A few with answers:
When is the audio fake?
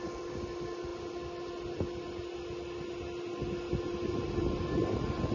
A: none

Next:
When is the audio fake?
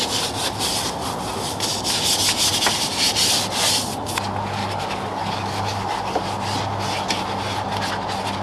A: 4.6-6.2 (codec, DAC)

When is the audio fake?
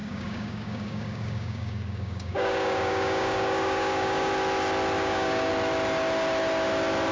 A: 0.0-4.3 (codec, DAC); 5.0-5.5